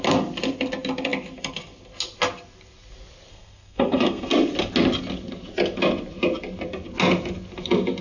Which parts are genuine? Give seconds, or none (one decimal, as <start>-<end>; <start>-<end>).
0.0-3.3; 4.3-8.0